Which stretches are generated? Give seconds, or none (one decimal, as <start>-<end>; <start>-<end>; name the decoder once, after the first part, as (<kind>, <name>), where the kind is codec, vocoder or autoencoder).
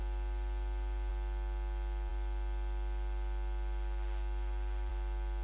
none